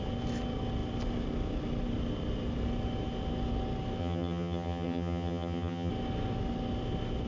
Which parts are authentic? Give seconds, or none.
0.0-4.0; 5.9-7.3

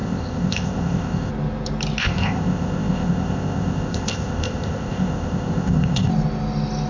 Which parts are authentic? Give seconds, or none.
1.3-2.0; 6.1-6.9

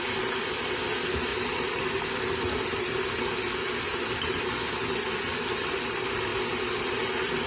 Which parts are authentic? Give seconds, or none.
0.0-7.5

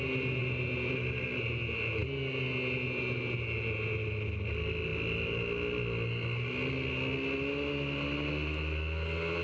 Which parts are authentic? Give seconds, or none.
0.0-9.4

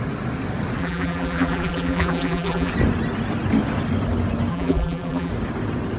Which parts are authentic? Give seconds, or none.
0.0-0.8; 2.7-4.5; 5.3-6.0

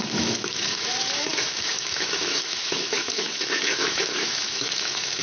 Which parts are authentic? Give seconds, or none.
none